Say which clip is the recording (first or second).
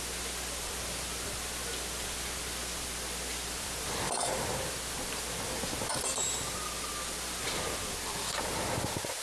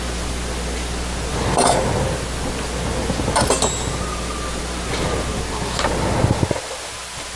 second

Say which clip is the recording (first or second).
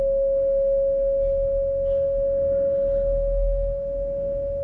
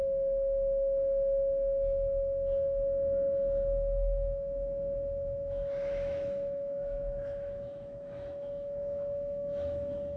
first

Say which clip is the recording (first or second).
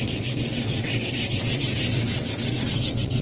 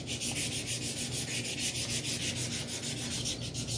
second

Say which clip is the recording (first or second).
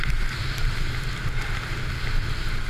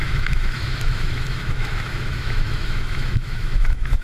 first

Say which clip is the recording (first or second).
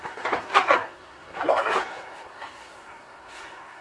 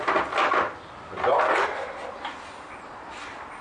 second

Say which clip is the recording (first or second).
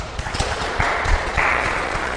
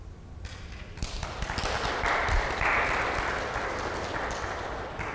second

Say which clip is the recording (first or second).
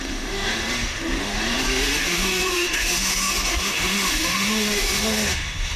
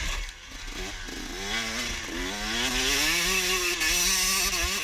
second